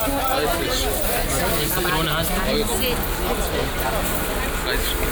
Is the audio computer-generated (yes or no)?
no